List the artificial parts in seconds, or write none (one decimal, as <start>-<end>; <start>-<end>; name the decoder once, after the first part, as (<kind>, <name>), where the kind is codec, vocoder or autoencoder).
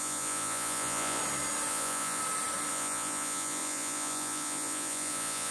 0.0-1.2 (vocoder, Vocos); 1.7-2.2; 2.7-5.5